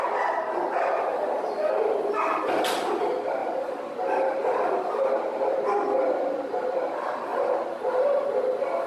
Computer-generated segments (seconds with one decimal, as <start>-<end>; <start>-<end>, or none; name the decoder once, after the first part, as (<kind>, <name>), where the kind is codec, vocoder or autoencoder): 3.4-4.4 (vocoder, BigVGAN v2)